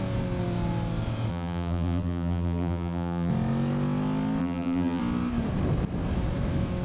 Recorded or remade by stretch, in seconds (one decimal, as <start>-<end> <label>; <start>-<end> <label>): 0.0-1.3 recorded; 1.3-3.3 remade; 3.3-4.4 recorded; 4.4-5.0 remade; 5.0-6.8 recorded